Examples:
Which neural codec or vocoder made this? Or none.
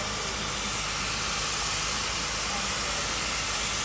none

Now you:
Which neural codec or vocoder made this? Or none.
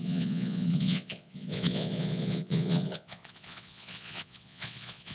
vocoder, Vocos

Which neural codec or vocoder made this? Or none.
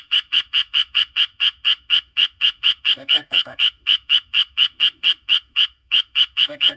autoencoder, DAC-VAE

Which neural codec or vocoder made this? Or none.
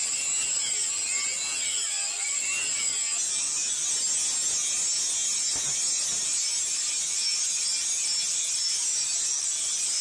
none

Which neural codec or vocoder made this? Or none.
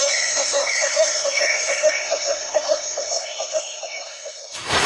codec, SNAC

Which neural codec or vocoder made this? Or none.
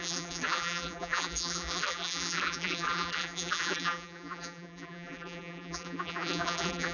vocoder, BigVGAN v2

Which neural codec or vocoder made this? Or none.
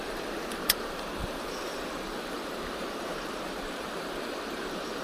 vocoder, BigVGAN v2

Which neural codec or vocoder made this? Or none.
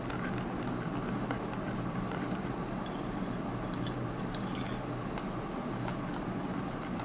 none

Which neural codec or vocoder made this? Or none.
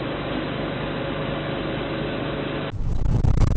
none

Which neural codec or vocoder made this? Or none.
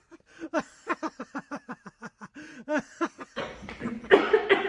none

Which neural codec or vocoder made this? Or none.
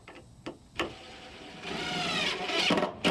none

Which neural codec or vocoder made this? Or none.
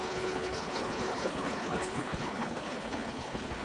codec, HILCodec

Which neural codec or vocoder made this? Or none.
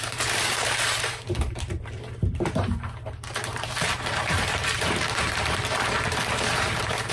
vocoder, BigVGAN v2